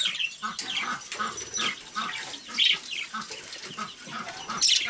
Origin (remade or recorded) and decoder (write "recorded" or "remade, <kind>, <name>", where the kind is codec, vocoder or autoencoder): recorded